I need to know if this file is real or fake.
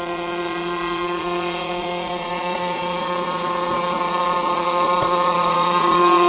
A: fake